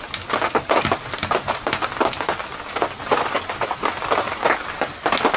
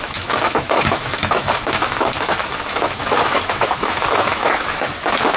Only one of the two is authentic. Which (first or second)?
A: first